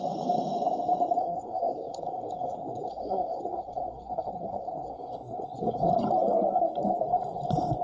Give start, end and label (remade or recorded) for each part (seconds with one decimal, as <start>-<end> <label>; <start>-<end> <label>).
0.0-1.2 recorded; 1.2-5.9 remade; 5.9-7.8 recorded